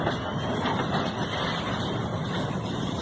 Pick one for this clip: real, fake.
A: real